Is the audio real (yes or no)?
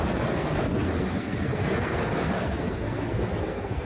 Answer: no